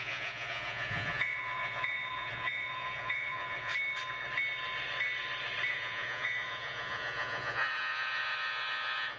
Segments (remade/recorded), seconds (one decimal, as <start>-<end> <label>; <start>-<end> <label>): 0.0-3.7 remade; 3.7-5.7 recorded; 5.7-9.2 remade